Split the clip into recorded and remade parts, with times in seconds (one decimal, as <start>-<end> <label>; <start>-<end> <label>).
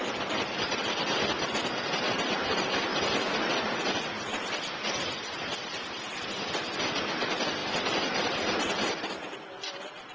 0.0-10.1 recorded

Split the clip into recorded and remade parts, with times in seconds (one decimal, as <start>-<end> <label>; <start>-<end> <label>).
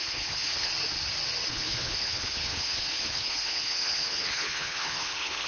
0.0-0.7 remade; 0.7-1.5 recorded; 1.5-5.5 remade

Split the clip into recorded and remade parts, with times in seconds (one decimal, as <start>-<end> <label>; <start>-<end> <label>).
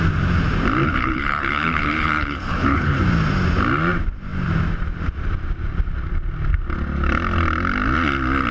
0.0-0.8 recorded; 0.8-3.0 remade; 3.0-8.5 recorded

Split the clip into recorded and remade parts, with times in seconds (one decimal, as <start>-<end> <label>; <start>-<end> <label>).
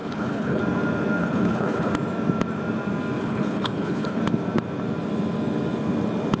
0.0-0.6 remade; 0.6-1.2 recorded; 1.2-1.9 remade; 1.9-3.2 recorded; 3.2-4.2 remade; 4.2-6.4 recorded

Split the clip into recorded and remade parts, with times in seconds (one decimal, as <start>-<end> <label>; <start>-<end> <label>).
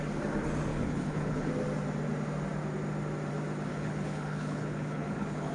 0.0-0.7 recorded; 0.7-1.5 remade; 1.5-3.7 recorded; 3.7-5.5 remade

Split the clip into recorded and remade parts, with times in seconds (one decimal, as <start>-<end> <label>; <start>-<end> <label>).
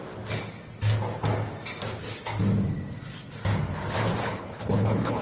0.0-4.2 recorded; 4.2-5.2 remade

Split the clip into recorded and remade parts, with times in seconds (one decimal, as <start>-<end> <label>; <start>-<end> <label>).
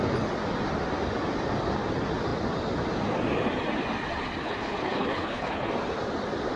0.0-4.4 recorded; 4.4-5.7 remade; 5.7-6.6 recorded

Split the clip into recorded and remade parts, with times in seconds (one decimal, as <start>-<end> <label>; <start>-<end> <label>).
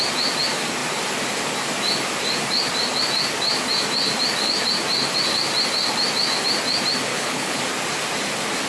0.0-7.1 recorded; 7.1-7.6 remade; 7.6-8.7 recorded